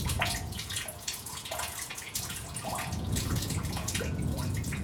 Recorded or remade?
remade